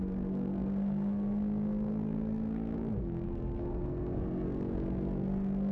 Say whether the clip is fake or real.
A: fake